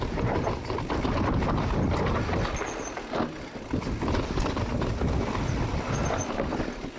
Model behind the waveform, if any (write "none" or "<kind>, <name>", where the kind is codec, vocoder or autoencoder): none